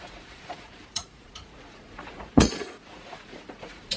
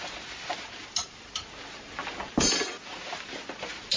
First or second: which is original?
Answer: second